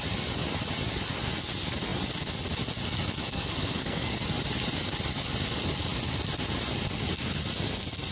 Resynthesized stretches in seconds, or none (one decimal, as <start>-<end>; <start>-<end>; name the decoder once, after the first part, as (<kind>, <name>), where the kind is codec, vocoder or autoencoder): 3.3-4.1 (codec, SNAC)